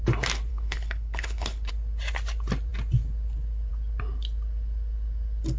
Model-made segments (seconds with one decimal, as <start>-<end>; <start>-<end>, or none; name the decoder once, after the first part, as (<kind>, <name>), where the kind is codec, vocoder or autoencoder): 0.5-1.7 (codec, HILCodec)